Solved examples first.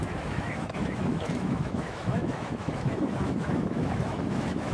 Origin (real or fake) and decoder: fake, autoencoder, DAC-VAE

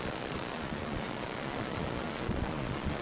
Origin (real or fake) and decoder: fake, vocoder, Vocos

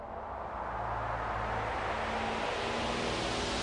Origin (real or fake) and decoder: real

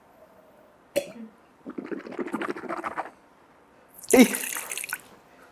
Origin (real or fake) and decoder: real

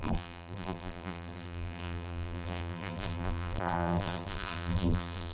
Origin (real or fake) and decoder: fake, vocoder, BigVGAN v2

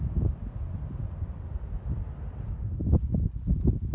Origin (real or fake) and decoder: real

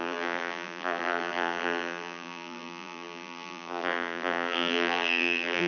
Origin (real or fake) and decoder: fake, vocoder, BigVGAN v2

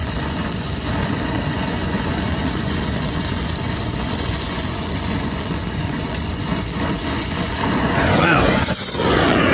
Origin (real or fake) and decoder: fake, vocoder, Vocos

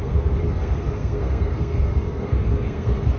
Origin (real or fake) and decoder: fake, codec, SNAC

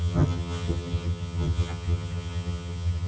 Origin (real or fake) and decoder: fake, vocoder, HiFi-GAN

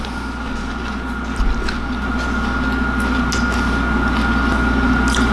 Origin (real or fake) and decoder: real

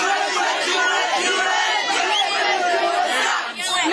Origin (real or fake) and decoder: real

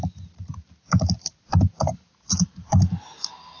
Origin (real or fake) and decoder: real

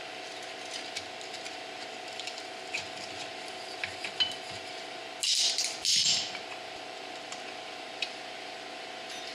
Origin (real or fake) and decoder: real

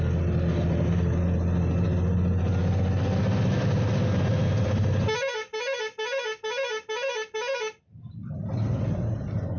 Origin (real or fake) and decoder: real